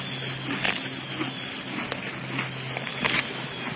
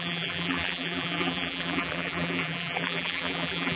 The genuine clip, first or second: first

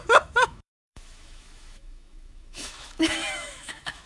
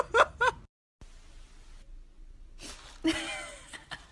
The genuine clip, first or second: second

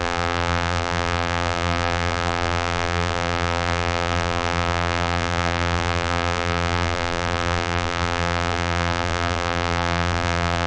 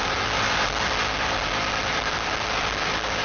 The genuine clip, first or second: second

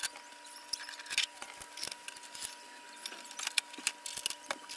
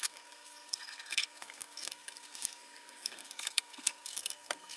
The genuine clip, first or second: first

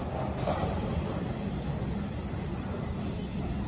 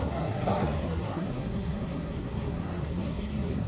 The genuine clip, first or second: first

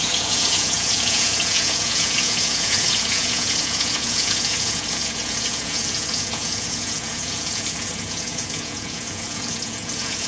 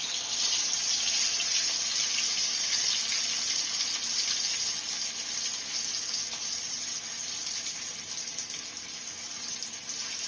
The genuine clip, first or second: second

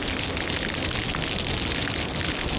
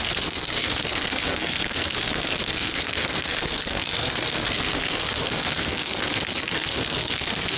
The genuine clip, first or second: first